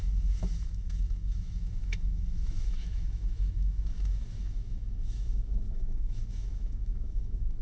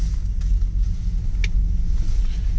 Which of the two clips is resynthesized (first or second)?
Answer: first